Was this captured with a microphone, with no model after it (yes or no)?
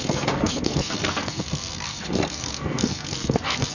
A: no